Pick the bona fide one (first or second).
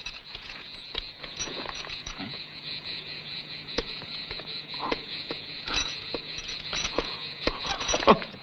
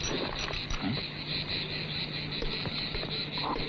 second